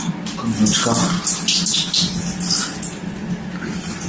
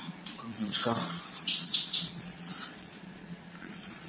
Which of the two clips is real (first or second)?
first